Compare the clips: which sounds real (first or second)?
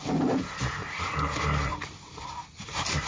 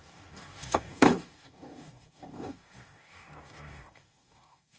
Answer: first